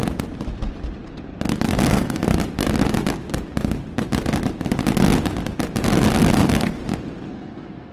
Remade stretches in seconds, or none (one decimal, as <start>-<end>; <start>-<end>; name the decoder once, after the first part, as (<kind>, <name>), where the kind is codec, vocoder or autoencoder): 1.9-2.3 (codec, SNAC); 6.3-6.8; 7.3-7.9